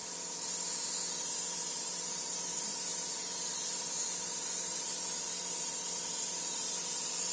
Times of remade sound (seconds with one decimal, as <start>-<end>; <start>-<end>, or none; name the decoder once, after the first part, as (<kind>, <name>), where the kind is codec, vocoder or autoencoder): none